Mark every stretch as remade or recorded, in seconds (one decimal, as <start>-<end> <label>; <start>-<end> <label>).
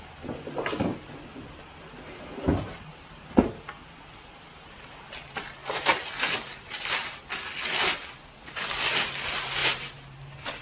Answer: 0.0-2.5 recorded; 2.5-3.5 remade; 3.5-9.6 recorded; 9.6-10.6 remade